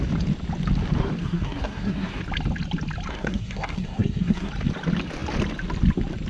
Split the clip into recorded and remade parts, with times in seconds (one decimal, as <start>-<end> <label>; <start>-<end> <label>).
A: 0.0-1.2 recorded; 1.2-2.2 remade; 2.2-3.1 recorded; 3.1-4.5 remade; 4.5-6.3 recorded